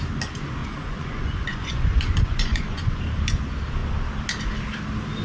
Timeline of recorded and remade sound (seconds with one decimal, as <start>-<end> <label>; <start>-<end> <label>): 0.0-0.6 recorded; 0.6-3.0 remade; 3.0-5.2 recorded